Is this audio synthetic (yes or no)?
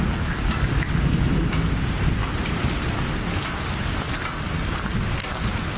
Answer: no